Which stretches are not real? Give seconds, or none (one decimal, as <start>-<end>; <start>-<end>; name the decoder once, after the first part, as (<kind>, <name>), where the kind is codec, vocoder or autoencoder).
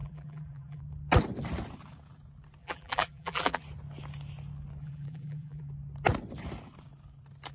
0.0-0.8 (vocoder, BigVGAN v2); 2.6-3.6; 4.8-5.7